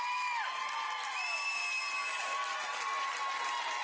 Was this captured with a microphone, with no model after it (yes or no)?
yes